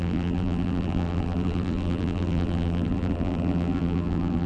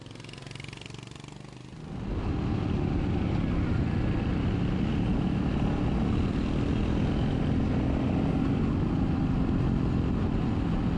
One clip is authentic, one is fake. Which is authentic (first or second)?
second